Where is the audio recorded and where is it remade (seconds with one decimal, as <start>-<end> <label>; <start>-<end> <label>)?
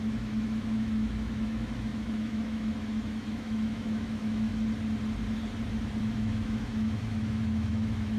0.0-4.5 remade; 4.5-6.0 recorded; 6.0-8.2 remade